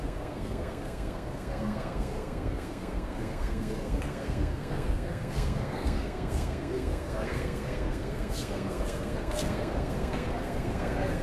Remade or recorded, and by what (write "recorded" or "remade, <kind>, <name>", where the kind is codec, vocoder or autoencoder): remade, codec, SNAC